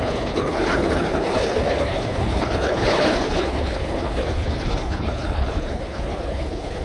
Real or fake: fake